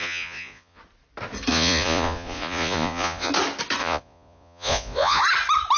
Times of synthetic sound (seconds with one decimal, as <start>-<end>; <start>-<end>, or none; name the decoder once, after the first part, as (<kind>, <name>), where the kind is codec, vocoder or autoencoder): 0.0-0.8 (vocoder, Vocos); 1.5-3.3; 3.8-5.2